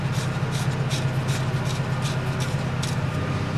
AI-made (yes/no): no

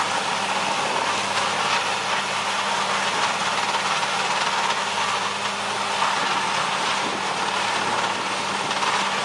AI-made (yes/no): no